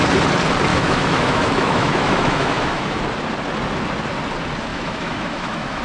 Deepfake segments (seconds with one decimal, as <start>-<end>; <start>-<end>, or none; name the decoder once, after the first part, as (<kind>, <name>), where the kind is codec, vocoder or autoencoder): 0.7-3.0 (autoencoder, DAC-VAE); 4.7-5.8